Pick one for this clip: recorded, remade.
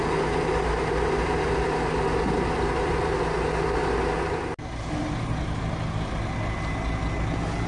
recorded